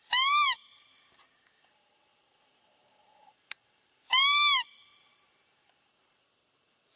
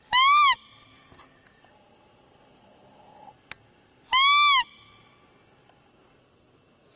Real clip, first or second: second